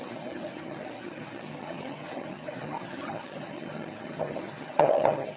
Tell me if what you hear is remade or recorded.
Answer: remade